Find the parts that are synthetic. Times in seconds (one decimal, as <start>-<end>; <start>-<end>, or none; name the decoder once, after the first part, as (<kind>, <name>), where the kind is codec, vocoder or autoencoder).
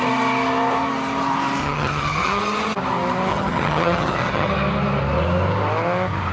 1.6-2.4 (vocoder, HiFi-GAN); 3.3-4.5